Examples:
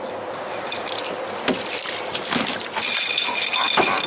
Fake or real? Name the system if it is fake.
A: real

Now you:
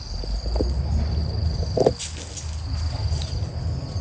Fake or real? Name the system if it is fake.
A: real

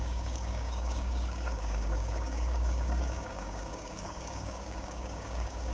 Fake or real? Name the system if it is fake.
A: fake, codec, DAC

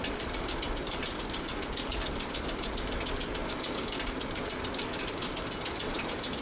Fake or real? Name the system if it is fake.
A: real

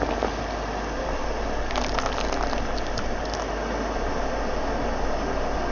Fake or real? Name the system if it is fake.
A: real